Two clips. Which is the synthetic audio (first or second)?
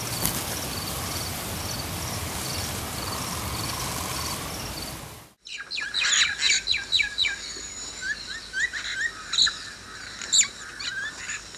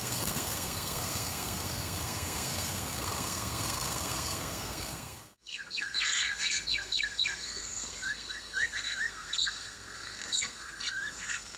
second